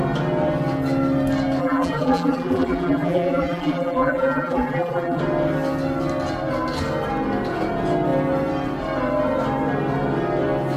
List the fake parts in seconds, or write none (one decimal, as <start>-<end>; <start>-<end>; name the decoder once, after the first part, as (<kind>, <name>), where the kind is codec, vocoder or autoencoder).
1.6-5.2 (vocoder, BigVGAN v2)